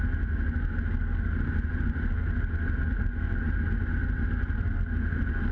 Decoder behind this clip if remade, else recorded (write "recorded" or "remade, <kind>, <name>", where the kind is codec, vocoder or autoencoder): recorded